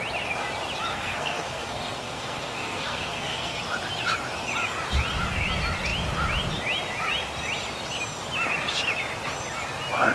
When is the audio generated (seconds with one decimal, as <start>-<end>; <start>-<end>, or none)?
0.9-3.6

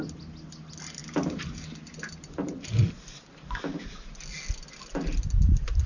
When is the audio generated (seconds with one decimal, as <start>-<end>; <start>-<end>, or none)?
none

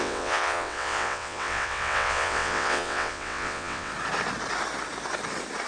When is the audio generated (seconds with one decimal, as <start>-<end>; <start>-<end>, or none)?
0.0-3.9

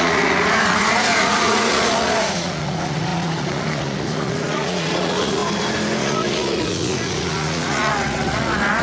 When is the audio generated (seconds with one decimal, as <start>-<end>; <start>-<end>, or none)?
0.0-5.4; 6.0-8.8

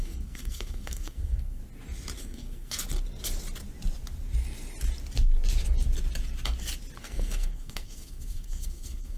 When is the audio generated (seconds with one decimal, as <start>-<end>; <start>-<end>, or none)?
0.0-1.6; 2.2-2.8; 7.0-9.2

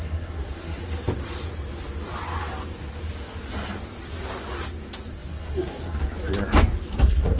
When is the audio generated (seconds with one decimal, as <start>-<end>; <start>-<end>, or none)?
0.0-0.8; 5.1-6.0; 7.0-7.4